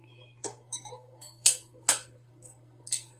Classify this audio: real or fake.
fake